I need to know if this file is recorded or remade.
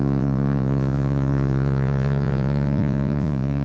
remade